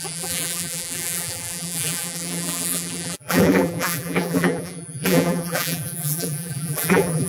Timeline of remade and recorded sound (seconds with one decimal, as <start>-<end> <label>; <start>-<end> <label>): 0.0-7.3 remade